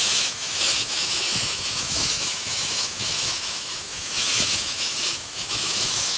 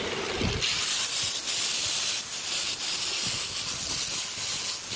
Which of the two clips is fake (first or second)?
first